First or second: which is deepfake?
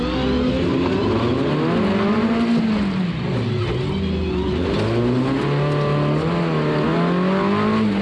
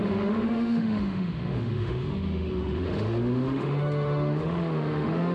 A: second